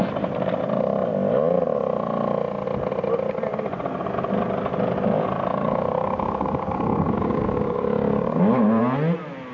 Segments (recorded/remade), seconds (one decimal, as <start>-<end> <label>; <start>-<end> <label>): 0.0-5.5 recorded; 5.5-8.8 remade; 8.8-9.5 recorded